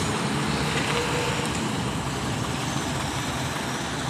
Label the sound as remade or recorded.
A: recorded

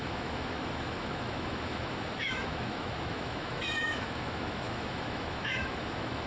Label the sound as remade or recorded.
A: remade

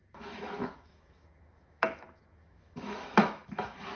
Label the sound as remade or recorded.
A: remade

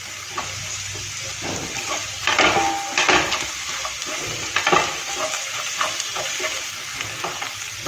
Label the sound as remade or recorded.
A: recorded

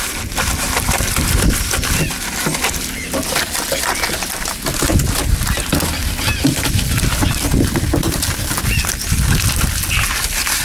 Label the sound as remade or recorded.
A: recorded